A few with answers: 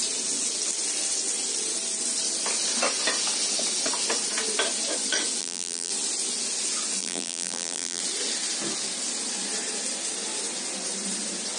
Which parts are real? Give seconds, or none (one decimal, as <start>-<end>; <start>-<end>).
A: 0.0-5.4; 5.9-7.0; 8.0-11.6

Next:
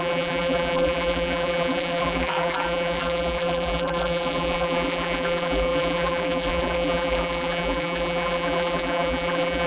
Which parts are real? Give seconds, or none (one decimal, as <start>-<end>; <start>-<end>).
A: none

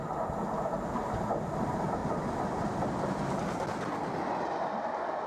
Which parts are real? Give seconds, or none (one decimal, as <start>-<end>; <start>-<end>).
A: 2.0-5.3